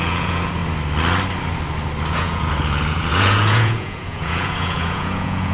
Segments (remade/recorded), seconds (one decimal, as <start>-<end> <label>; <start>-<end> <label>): 0.0-0.6 remade; 0.6-2.1 recorded; 2.1-5.5 remade

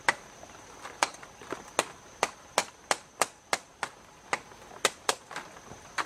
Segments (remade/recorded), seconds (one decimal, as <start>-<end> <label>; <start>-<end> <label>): 0.0-6.1 recorded

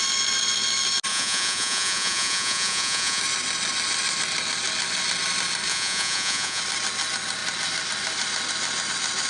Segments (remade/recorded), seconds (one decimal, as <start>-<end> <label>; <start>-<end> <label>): 0.0-1.1 recorded; 1.1-3.2 remade; 3.2-5.7 recorded; 5.7-6.6 remade; 6.6-9.3 recorded

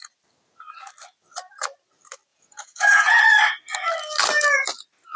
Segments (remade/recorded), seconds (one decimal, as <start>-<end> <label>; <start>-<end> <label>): 0.0-2.3 recorded; 2.3-3.2 remade; 3.2-5.2 recorded

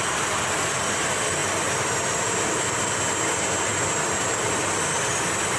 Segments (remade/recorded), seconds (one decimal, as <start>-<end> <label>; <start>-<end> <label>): 0.0-5.6 recorded

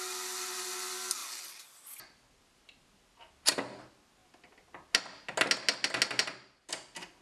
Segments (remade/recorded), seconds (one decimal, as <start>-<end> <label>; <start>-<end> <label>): 0.0-7.2 recorded

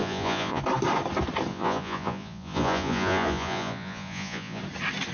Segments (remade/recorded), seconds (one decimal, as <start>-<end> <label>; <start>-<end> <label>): 0.0-0.6 remade; 0.6-1.5 recorded; 1.5-4.6 remade; 4.6-5.1 recorded

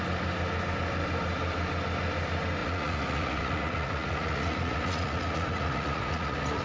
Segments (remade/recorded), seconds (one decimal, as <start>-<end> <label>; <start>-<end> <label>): 0.0-2.6 recorded; 2.6-6.6 remade